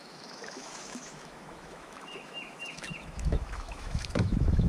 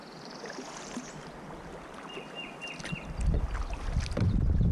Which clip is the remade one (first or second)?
first